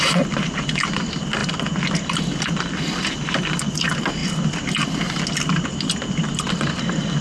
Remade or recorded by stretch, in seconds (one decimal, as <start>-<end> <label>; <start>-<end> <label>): 0.0-7.2 recorded